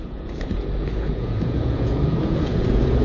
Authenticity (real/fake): fake